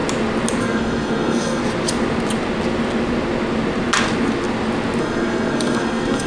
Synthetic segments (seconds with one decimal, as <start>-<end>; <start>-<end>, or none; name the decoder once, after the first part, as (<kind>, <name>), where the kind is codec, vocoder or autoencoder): 0.6-1.6 (codec, SNAC); 5.0-6.3